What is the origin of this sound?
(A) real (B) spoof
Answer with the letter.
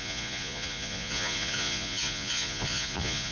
B